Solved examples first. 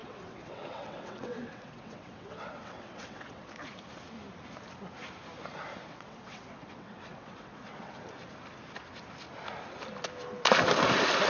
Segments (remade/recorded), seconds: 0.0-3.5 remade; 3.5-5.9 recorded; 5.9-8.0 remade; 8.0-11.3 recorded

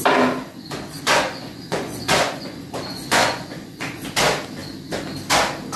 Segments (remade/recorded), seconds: 0.0-0.5 recorded; 0.5-4.0 remade; 4.0-5.8 recorded

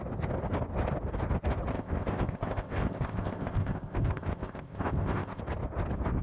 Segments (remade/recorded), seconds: 0.0-1.7 recorded; 1.7-5.4 remade; 5.4-6.2 recorded

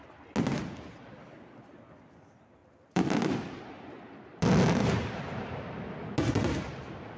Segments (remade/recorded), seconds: 0.0-2.6 recorded; 2.6-3.8 remade; 3.8-4.8 recorded; 4.8-5.9 remade; 5.9-7.2 recorded